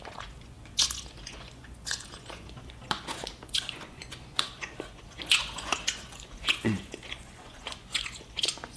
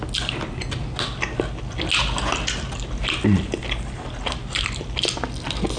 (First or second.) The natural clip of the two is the second